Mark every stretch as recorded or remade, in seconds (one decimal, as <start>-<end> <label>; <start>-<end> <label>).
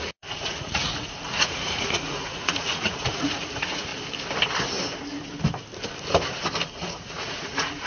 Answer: 0.0-3.9 remade; 3.9-6.7 recorded; 6.7-7.9 remade